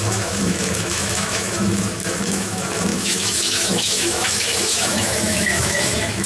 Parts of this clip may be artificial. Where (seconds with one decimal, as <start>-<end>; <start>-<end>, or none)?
0.0-6.3